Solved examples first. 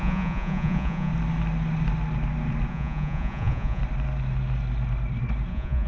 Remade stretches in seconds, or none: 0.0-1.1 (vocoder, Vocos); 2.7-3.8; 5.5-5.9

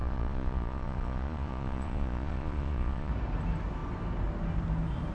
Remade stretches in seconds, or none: 0.0-3.1 (vocoder, Vocos)

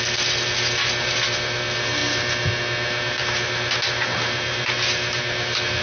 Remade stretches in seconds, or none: none

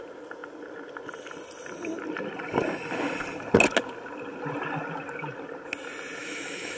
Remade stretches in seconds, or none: 6.2-6.8 (autoencoder, DAC-VAE)

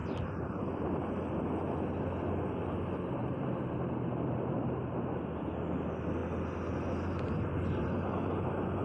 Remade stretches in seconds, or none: 0.0-0.6 (vocoder, BigVGAN v2); 3.2-5.0

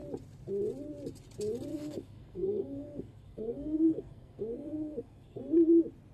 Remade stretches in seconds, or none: 1.7-5.4 (codec, SNAC)